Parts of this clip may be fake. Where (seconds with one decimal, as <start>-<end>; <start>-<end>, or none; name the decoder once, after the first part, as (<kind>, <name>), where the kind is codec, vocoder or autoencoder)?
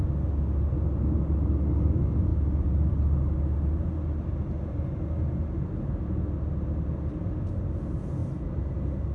none